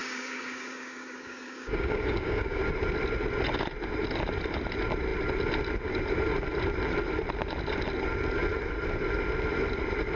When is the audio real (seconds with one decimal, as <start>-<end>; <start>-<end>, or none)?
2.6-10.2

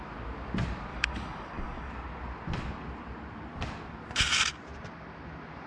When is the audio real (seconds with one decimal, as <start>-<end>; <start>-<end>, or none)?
0.0-0.9; 1.9-5.7

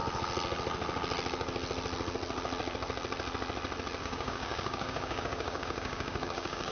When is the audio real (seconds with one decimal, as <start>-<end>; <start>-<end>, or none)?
0.0-4.0